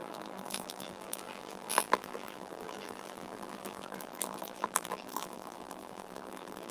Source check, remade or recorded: remade